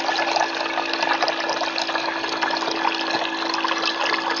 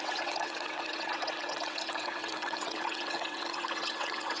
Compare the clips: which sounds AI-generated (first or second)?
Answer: second